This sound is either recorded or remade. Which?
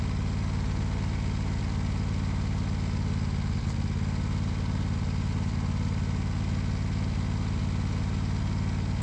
recorded